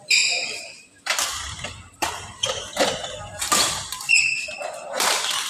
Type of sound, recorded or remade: remade